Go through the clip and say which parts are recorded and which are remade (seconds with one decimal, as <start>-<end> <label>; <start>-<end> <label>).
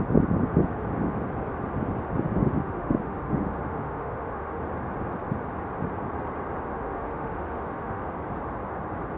0.0-2.4 recorded; 2.4-4.6 remade; 4.6-6.7 recorded; 6.7-8.0 remade; 8.0-9.2 recorded